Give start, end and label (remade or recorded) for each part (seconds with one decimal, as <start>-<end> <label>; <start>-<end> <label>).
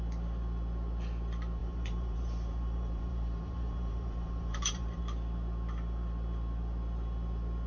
0.0-1.6 recorded; 1.6-5.0 remade; 5.0-7.7 recorded